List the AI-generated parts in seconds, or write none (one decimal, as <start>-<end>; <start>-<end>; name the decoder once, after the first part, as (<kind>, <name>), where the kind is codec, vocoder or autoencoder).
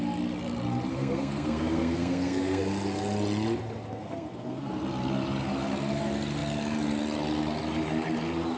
0.9-2.6 (codec, SNAC); 3.9-4.7